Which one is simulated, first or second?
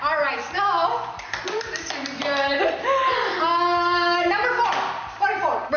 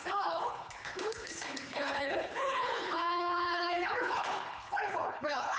second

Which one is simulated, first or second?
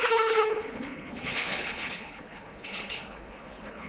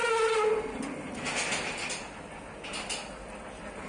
first